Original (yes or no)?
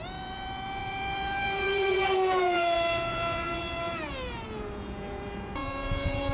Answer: no